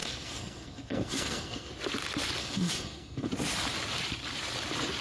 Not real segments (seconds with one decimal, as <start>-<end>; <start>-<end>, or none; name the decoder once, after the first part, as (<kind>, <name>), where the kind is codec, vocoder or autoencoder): 0.0-1.7 (codec, SNAC); 2.4-3.3

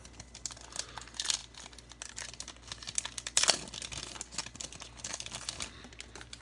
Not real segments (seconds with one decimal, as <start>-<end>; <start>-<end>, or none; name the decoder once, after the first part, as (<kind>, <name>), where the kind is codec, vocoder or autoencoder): none

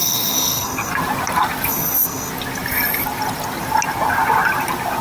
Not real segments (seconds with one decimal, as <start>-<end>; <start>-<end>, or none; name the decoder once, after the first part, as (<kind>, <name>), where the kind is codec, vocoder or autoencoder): 0.0-0.9 (codec, SNAC); 1.7-2.3

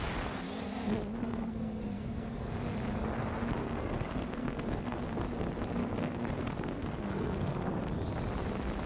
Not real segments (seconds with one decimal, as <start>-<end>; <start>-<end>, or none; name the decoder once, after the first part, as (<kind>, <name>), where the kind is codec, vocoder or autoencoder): 1.2-2.5 (codec, SNAC); 3.6-5.0; 5.8-7.8

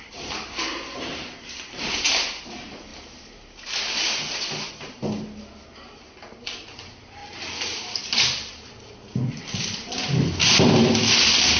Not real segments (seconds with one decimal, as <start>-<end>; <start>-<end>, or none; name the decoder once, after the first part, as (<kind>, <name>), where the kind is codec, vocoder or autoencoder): none

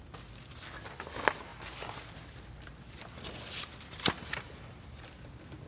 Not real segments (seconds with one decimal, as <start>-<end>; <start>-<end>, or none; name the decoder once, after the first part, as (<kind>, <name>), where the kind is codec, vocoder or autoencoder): none

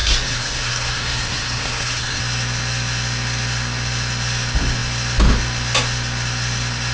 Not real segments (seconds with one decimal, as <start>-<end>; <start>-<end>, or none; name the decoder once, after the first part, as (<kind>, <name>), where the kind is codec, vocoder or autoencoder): 0.0-2.2 (codec, SNAC)